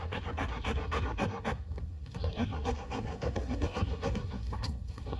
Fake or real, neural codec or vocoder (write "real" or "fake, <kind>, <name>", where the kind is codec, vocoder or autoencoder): fake, codec, SNAC